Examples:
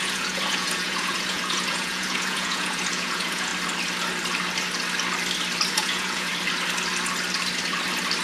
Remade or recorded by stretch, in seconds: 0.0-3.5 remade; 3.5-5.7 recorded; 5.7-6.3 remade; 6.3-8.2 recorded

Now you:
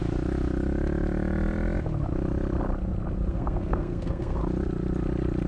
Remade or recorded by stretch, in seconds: 0.0-3.3 recorded; 3.3-4.4 remade; 4.4-5.5 recorded

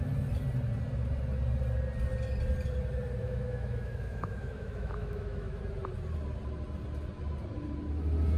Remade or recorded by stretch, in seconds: 0.0-3.2 recorded; 3.2-5.6 remade; 5.6-8.4 recorded